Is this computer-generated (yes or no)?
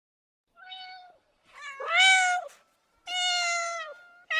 no